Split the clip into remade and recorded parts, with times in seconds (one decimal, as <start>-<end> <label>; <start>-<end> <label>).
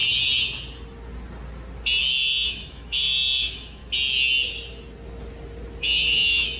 0.0-2.0 recorded; 2.0-3.8 remade; 3.8-5.8 recorded; 5.8-6.6 remade